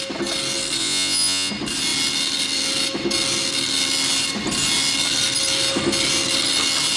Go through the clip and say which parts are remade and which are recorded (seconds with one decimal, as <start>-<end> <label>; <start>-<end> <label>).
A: 0.0-0.8 recorded; 0.8-1.5 remade; 1.5-7.0 recorded